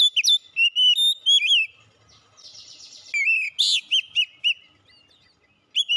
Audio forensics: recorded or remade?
recorded